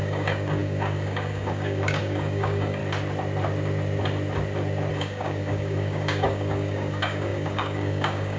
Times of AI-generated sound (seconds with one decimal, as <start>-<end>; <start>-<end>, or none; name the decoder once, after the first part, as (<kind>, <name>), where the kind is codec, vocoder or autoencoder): 0.0-2.8 (codec, DAC); 4.9-8.4